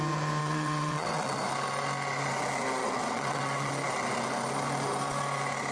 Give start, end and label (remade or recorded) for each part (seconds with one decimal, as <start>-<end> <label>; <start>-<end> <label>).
0.0-0.4 recorded; 0.4-1.4 remade; 1.4-2.8 recorded; 2.8-3.7 remade; 3.7-5.7 recorded

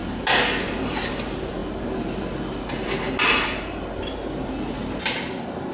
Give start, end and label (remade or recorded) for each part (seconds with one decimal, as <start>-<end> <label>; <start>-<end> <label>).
0.0-5.7 recorded